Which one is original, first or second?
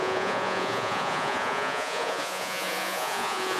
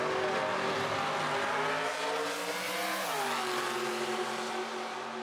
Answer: second